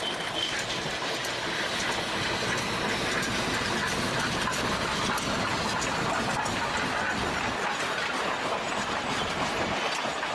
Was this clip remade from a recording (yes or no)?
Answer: no